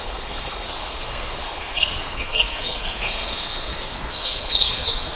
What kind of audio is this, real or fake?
fake